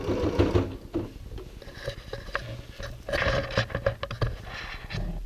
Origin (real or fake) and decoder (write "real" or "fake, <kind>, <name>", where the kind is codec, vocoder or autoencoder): real